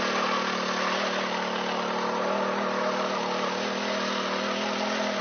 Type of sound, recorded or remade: recorded